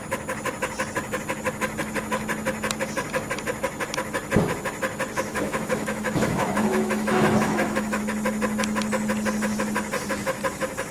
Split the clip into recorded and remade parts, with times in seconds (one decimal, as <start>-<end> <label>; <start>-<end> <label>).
0.0-5.3 recorded; 5.3-8.0 remade; 8.0-10.9 recorded